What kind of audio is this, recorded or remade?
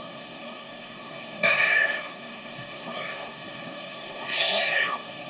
remade